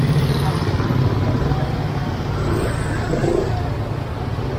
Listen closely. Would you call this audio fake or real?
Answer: real